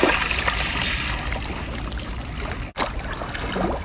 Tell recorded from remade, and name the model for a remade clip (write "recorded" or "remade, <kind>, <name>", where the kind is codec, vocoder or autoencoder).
recorded